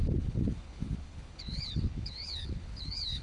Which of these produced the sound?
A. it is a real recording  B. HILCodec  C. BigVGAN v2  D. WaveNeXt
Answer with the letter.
B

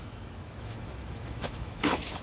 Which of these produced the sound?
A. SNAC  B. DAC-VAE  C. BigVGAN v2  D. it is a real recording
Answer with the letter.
B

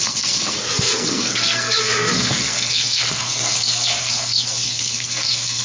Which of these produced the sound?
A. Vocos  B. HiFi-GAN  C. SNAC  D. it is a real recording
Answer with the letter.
C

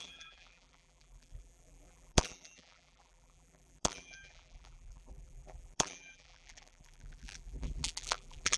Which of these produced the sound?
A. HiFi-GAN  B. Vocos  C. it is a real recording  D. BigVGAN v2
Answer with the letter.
D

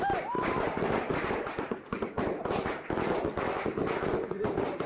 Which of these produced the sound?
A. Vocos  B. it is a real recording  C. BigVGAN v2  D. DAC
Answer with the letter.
B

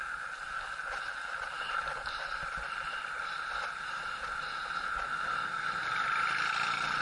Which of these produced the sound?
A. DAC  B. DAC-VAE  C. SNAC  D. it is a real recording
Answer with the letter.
D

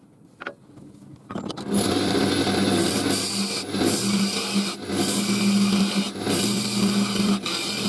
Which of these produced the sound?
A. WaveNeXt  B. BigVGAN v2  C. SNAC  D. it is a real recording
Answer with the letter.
D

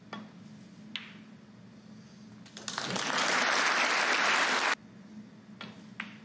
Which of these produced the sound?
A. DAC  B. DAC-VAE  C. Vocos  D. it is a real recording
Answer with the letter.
D